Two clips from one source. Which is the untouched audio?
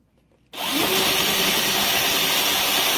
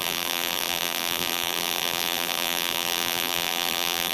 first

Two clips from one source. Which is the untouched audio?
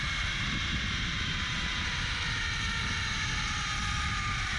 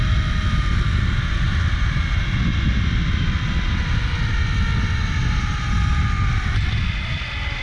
second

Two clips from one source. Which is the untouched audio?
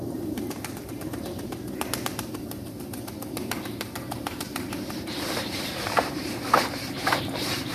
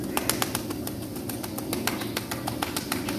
second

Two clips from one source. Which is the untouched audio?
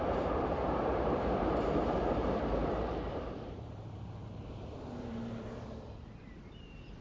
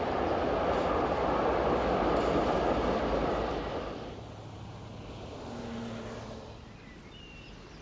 second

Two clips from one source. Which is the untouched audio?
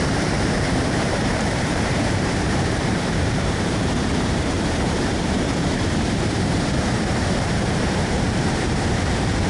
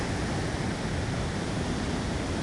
second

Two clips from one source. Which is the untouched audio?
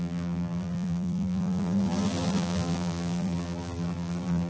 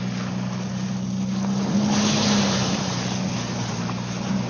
second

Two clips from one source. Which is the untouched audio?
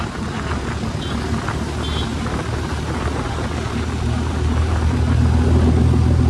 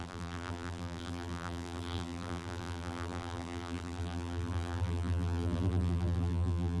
first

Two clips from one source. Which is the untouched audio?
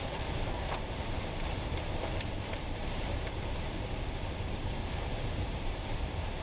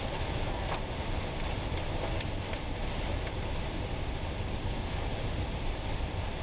second